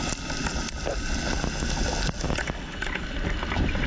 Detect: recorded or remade recorded